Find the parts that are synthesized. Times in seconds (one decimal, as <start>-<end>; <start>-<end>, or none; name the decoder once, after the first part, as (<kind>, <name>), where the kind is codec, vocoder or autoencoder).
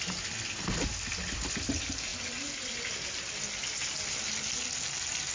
none